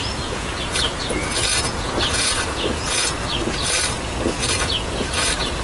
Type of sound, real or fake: fake